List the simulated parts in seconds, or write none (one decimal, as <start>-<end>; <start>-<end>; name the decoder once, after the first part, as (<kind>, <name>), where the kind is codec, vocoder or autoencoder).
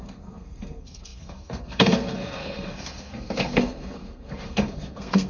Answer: 0.0-5.3 (codec, SNAC)